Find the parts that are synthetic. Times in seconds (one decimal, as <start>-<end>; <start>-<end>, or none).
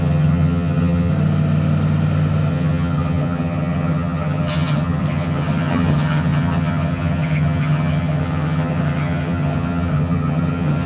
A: 0.0-1.1; 2.5-10.9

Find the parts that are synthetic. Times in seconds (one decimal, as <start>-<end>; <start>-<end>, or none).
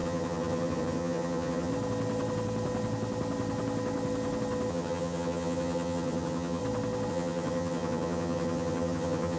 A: 0.0-1.7; 4.7-6.6; 7.1-9.4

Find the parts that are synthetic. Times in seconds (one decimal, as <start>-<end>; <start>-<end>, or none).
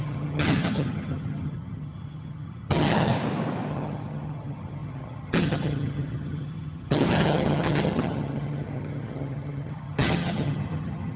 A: 0.0-3.1; 3.7-11.2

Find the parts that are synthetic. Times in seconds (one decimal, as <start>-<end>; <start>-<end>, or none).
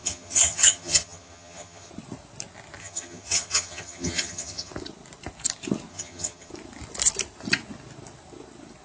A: 0.0-1.9; 2.8-4.7; 5.9-6.5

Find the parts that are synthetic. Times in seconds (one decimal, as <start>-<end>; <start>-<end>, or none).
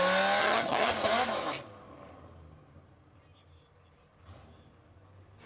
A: 0.4-0.9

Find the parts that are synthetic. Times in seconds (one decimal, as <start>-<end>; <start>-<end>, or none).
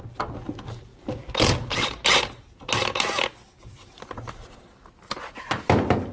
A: none